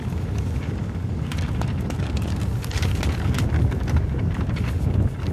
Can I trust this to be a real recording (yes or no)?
no